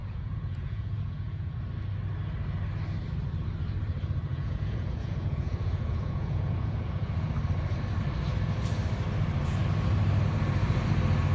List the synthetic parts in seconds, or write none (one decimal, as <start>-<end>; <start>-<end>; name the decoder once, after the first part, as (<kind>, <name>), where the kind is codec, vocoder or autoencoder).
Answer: 0.0-1.6 (vocoder, Vocos); 4.3-7.3